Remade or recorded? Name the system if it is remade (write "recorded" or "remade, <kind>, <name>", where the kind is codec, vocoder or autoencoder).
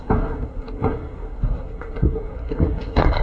remade, codec, SNAC